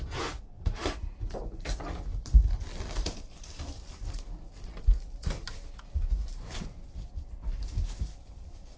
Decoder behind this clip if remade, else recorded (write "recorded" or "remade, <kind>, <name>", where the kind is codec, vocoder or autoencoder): recorded